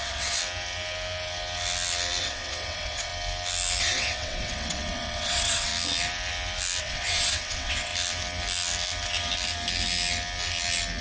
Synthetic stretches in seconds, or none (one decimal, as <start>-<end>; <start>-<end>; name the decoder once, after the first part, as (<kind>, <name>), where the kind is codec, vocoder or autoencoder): 0.0-0.4 (vocoder, WaveNeXt); 2.2-3.1; 3.8-5.7; 6.8-7.9